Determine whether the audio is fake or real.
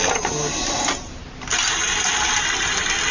real